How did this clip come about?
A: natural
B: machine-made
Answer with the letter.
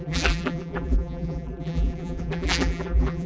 B